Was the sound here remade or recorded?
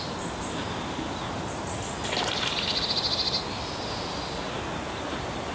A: recorded